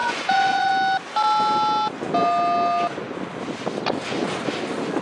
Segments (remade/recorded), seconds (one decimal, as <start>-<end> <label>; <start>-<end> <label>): 0.0-0.7 remade; 0.7-5.0 recorded